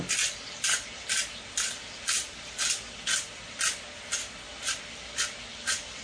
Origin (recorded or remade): recorded